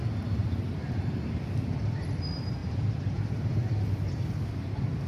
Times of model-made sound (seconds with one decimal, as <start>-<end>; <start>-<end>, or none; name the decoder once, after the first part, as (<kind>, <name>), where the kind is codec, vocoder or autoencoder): 2.6-3.1 (vocoder, BigVGAN v2)